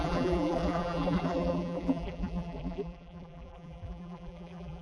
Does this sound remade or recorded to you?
remade